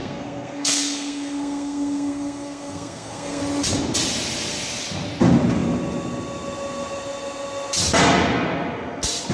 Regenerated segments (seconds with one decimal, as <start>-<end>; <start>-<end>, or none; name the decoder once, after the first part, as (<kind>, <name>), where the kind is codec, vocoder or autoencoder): 0.0-3.4 (codec, SNAC)